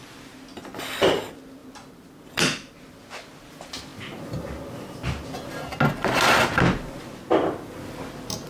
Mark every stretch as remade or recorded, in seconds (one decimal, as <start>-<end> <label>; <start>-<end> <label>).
0.0-8.5 recorded